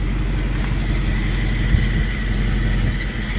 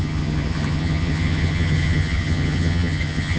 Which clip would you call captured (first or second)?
first